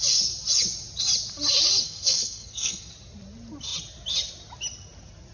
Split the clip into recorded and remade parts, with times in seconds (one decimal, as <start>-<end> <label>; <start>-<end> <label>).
0.0-1.8 recorded; 1.8-2.9 remade; 2.9-5.3 recorded